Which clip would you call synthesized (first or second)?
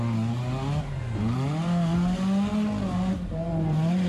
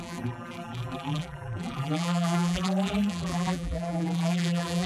second